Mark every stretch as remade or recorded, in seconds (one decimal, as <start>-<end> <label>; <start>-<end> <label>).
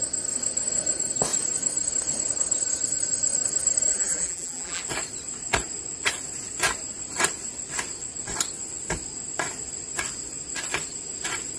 0.0-3.9 recorded; 3.9-4.8 remade; 4.8-11.6 recorded